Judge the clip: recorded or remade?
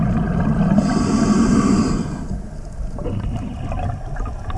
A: recorded